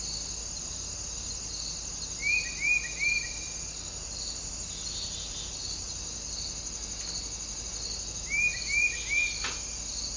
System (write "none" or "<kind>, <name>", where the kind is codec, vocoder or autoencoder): none